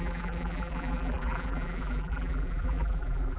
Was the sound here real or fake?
fake